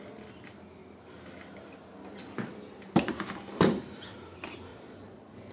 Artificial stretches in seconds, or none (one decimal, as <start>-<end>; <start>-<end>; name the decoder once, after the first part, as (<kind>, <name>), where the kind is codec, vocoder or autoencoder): 4.7-5.5 (vocoder, Vocos)